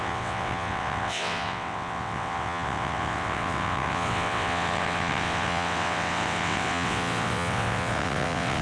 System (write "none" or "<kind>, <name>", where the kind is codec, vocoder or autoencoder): vocoder, WaveNeXt